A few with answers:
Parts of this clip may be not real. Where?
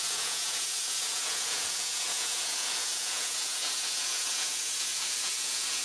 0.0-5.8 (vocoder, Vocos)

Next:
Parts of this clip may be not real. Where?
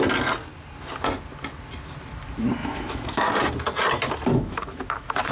2.6-3.3 (autoencoder, DAC-VAE); 4.3-5.3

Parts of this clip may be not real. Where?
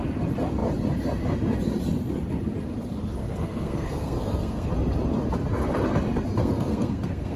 3.2-4.7 (codec, SNAC); 6.4-7.4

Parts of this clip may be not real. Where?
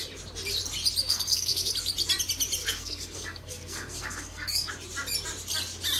1.0-1.7 (codec, SNAC); 2.6-4.7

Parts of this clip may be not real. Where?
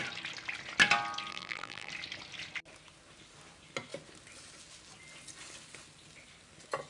1.3-1.9 (vocoder, BigVGAN v2)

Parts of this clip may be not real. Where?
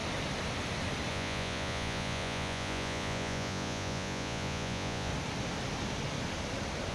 1.1-5.1 (vocoder, Vocos)